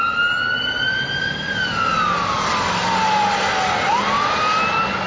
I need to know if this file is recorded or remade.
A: recorded